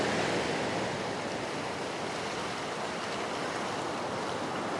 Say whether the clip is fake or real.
real